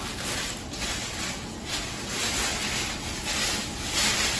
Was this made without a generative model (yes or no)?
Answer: yes